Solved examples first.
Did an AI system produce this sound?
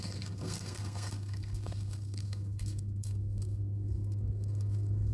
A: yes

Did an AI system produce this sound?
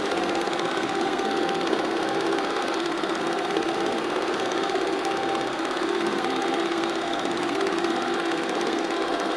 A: yes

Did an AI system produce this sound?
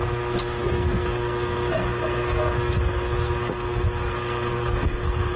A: yes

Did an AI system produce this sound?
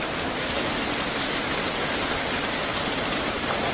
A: no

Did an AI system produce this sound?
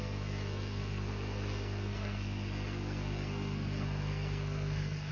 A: yes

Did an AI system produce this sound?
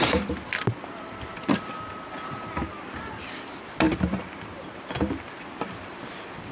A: no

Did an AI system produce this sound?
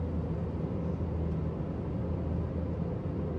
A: no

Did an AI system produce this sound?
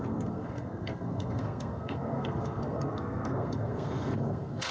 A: yes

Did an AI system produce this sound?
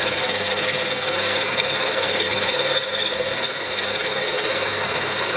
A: yes